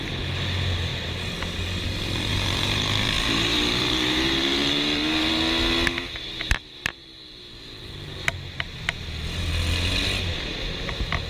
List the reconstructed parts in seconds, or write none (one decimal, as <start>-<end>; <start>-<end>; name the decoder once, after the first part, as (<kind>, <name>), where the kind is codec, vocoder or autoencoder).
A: 2.3-5.3 (vocoder, BigVGAN v2)